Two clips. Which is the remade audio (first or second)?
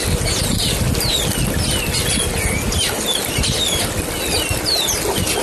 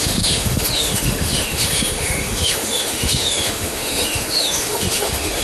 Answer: second